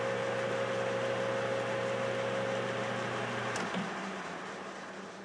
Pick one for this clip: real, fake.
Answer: real